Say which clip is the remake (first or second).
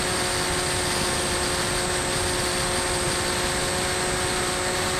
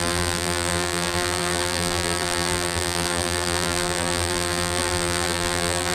second